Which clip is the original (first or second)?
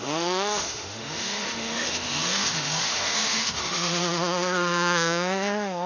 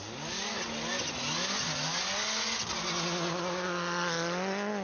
second